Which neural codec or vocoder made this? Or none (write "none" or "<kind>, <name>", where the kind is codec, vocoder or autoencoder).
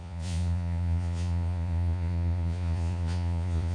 vocoder, Vocos